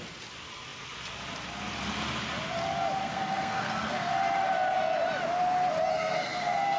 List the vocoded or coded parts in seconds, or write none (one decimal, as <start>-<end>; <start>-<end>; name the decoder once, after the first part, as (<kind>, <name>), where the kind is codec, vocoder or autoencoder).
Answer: 3.0-4.1 (codec, SNAC); 5.9-6.8